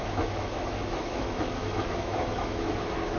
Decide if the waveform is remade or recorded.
remade